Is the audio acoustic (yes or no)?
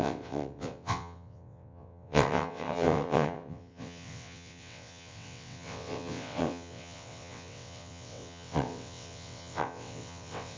no